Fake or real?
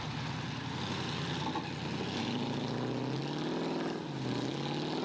real